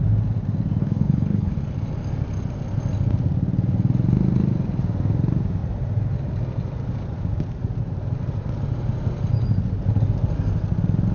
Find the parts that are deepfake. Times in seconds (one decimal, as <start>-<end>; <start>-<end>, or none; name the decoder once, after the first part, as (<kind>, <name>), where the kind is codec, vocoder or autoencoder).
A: 0.8-1.5 (codec, HILCodec)

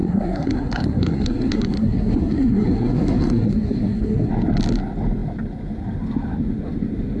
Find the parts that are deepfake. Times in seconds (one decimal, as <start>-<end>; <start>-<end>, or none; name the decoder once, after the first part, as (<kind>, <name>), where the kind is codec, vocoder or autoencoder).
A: 0.0-4.3 (codec, SNAC)

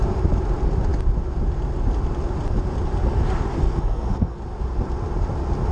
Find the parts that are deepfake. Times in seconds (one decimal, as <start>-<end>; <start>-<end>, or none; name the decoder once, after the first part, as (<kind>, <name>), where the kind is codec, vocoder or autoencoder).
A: 3.5-4.4 (codec, SNAC)

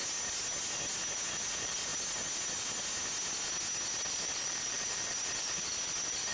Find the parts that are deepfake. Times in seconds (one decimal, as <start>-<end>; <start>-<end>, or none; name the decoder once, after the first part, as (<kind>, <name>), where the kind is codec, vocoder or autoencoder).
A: 1.3-1.9 (vocoder, BigVGAN v2); 4.1-6.3